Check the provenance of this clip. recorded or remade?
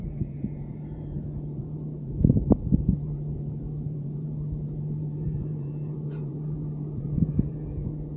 remade